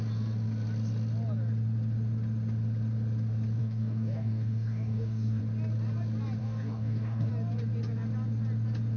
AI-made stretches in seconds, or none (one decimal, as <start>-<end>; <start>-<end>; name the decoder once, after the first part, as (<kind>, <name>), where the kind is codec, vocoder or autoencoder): 3.6-5.4 (codec, DAC); 6.4-7.3